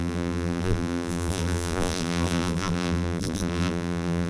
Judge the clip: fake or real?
fake